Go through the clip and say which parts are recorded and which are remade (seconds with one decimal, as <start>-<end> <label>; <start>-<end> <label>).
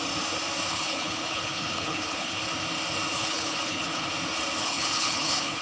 0.0-0.7 recorded; 0.7-2.4 remade; 2.4-3.1 recorded; 3.1-4.1 remade; 4.1-4.6 recorded; 4.6-5.6 remade